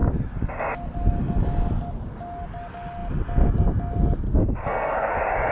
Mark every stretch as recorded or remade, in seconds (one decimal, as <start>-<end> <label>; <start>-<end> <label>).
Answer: 0.0-4.3 recorded; 4.3-5.1 remade; 5.1-5.5 recorded